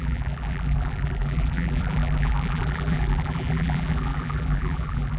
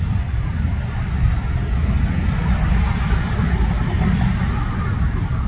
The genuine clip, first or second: second